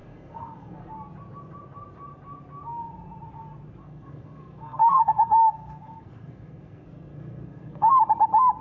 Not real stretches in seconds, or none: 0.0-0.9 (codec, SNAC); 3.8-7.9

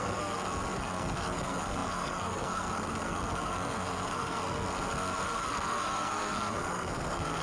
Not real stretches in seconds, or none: 0.0-7.4 (codec, SNAC)